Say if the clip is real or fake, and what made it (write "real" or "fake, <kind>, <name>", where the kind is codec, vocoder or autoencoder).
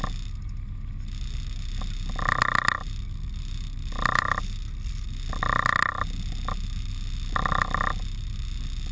real